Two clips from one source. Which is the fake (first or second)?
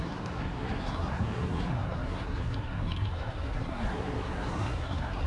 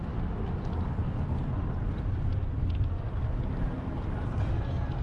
first